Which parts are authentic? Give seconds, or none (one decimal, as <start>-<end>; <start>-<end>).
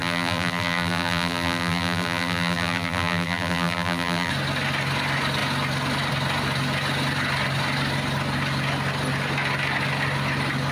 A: 4.3-10.7